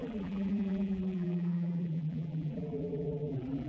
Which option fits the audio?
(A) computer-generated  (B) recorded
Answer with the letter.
A